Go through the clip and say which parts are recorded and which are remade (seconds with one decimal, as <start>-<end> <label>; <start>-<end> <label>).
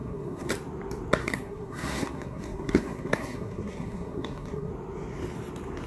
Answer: 0.0-0.5 remade; 0.5-1.2 recorded; 1.2-4.7 remade; 4.7-5.9 recorded